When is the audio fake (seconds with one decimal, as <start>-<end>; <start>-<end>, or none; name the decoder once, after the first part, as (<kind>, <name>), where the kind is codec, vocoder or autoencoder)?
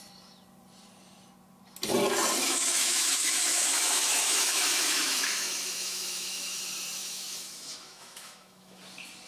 2.4-6.6 (autoencoder, DAC-VAE); 7.0-8.8